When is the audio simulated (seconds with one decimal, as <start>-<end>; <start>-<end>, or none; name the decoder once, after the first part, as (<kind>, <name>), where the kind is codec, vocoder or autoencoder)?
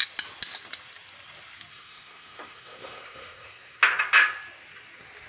1.7-3.8 (codec, SNAC)